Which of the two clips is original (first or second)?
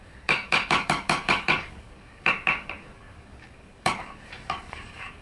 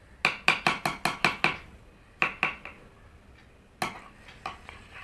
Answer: second